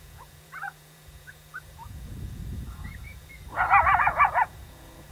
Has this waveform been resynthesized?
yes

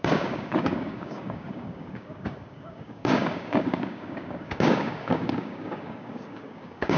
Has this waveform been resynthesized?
yes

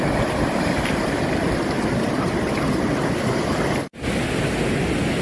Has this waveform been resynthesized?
no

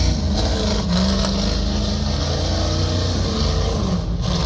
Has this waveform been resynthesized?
no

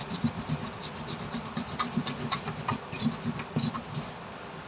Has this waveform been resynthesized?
no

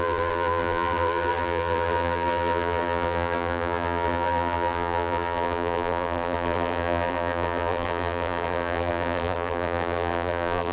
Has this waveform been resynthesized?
yes